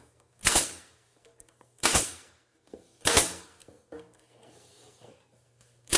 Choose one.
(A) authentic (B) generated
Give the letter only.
B